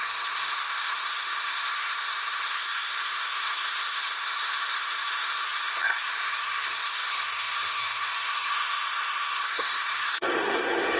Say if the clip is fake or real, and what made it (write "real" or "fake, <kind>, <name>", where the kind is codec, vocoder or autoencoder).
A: fake, codec, SNAC